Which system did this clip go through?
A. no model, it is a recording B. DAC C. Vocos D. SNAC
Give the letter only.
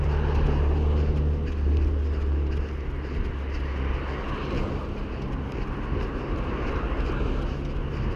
A